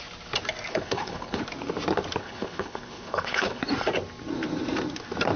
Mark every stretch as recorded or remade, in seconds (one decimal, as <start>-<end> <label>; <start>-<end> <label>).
0.0-0.7 recorded; 0.7-1.4 remade; 1.4-2.2 recorded; 2.2-3.6 remade; 3.6-5.4 recorded